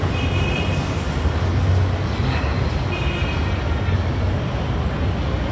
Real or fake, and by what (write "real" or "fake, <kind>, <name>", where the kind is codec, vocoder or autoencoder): real